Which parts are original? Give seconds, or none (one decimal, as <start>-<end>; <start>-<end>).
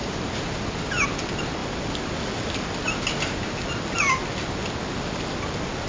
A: 0.7-5.9